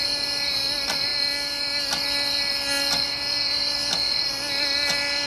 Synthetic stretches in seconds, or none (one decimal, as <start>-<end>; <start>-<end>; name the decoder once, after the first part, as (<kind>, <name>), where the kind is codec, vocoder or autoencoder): none